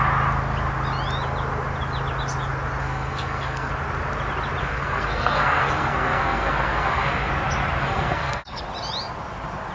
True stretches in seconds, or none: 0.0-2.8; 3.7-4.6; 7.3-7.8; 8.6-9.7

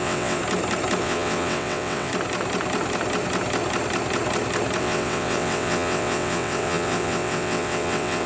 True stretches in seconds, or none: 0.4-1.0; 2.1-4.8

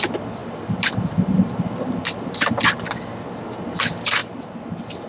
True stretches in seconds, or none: 0.0-5.1

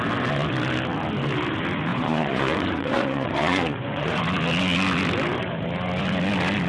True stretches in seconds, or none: 0.0-1.9; 4.2-6.7

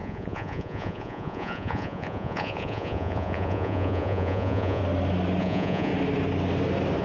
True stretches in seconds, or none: 4.8-5.4; 5.9-7.0